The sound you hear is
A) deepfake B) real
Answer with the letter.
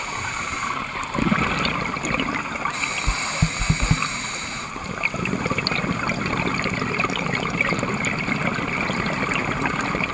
B